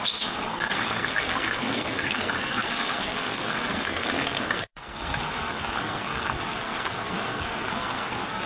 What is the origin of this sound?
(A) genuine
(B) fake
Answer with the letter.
B